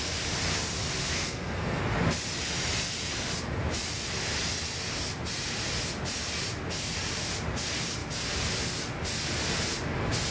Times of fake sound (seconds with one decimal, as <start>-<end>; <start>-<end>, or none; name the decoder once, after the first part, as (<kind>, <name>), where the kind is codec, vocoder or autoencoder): 1.0-1.8 (codec, SNAC)